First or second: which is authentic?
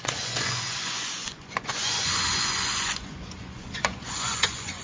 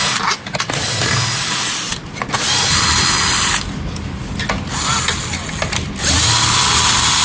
second